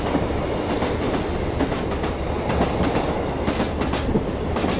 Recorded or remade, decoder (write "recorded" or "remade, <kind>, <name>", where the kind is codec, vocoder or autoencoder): recorded